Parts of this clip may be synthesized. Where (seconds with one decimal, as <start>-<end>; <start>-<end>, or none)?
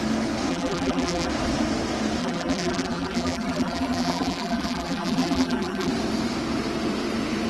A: 0.5-1.3; 2.2-5.9